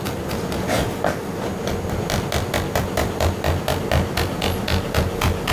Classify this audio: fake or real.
real